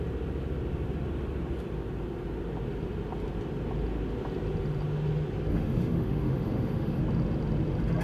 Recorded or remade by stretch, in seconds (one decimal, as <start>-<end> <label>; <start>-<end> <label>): 0.0-5.5 recorded; 5.5-7.0 remade; 7.0-8.0 recorded

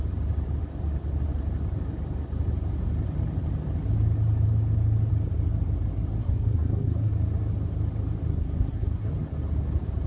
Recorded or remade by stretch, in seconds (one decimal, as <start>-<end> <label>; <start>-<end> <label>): 0.0-6.2 recorded; 6.2-7.1 remade; 7.1-8.3 recorded; 8.3-9.1 remade; 9.1-10.1 recorded

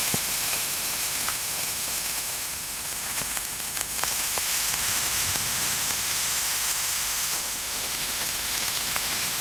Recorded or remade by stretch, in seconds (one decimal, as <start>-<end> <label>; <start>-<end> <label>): 0.0-9.4 remade

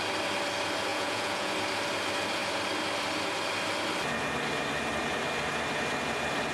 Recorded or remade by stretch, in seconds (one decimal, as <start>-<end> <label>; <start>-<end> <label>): 0.0-0.9 recorded; 0.9-1.5 remade; 1.5-6.5 recorded